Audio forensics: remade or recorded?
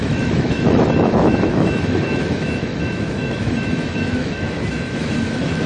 remade